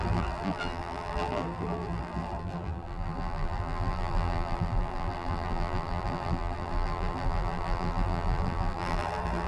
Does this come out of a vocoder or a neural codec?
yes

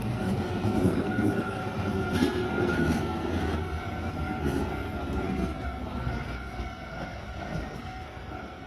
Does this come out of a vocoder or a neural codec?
yes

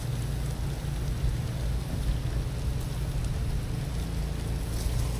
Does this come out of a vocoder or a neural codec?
no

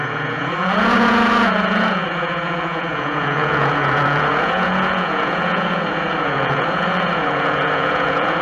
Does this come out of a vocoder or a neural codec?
yes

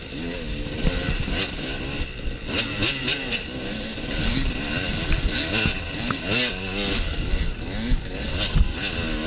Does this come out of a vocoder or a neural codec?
no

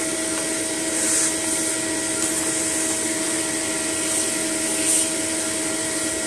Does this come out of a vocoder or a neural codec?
no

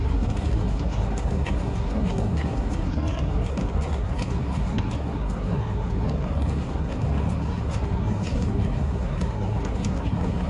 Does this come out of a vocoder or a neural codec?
yes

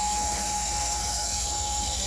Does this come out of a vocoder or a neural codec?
yes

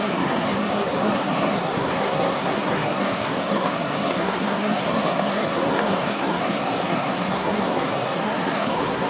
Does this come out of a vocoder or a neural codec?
yes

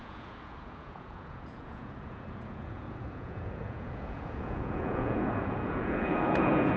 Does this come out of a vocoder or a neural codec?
yes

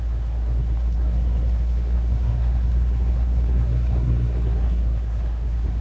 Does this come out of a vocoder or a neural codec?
yes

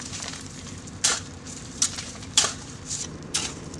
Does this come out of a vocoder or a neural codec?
yes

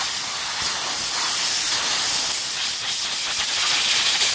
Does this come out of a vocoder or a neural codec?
no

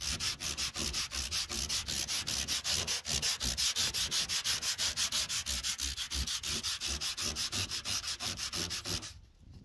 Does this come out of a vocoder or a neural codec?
no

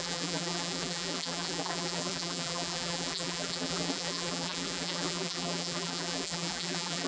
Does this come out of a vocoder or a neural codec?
yes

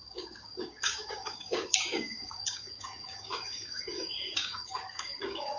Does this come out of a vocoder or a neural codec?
yes